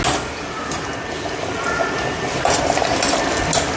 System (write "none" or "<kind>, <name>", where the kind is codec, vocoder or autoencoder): none